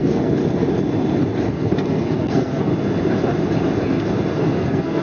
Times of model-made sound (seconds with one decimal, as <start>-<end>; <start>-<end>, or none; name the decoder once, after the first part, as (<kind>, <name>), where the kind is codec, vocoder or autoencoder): 0.0-0.4 (codec, SNAC); 1.5-2.7; 4.4-5.0